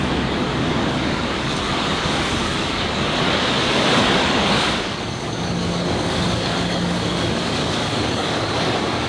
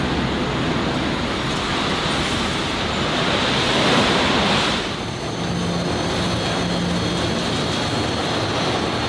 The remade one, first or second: first